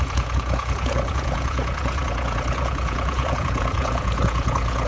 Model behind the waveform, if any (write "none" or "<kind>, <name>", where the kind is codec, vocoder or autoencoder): vocoder, Vocos